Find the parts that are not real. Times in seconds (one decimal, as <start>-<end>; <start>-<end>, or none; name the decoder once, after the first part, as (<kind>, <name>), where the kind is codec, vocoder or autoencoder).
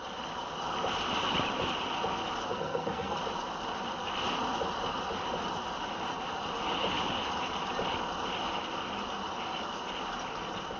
2.5-3.2 (codec, SNAC)